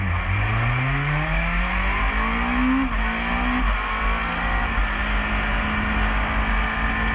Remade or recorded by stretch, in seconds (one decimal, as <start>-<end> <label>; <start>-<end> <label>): 0.0-7.1 recorded